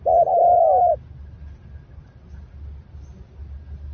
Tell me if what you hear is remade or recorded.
recorded